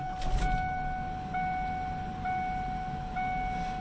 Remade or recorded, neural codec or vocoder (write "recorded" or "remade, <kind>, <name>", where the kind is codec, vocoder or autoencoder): recorded